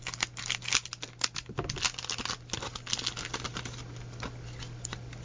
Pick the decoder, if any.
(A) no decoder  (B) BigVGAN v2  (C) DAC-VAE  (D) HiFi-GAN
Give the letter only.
A